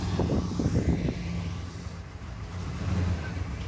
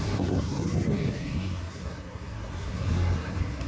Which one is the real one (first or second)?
first